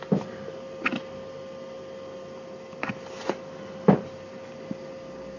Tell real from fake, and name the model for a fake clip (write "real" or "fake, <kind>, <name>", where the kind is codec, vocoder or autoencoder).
real